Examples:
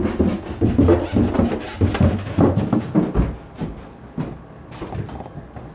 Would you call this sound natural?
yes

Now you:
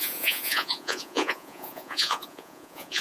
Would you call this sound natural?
no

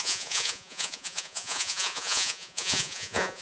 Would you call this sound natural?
no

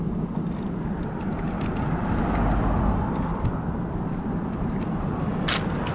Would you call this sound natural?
yes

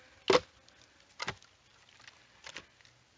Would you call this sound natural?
yes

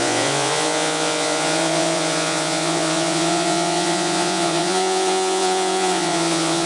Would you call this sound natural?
no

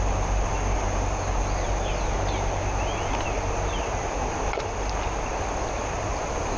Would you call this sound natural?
yes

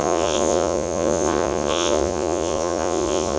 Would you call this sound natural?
no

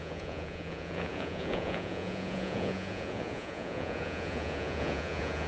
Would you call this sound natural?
no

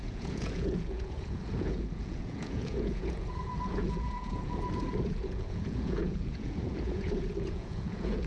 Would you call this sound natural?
no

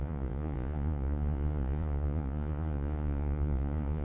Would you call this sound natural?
no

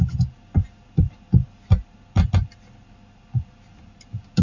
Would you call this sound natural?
yes